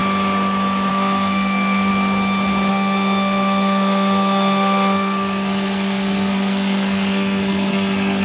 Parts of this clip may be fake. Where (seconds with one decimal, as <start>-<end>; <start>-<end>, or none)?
0.9-1.9; 2.7-8.2